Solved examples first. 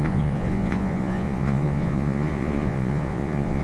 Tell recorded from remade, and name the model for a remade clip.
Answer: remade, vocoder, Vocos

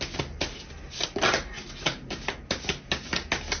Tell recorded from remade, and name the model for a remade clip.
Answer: recorded